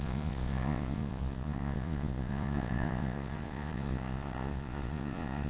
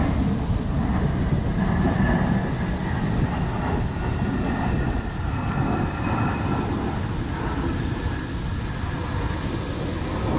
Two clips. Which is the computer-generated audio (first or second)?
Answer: first